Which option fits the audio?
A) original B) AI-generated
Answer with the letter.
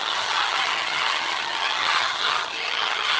B